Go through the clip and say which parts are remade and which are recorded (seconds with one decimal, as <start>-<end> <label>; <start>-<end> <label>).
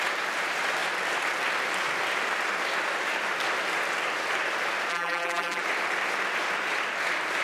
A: 0.0-4.9 recorded; 4.9-5.6 remade; 5.6-7.4 recorded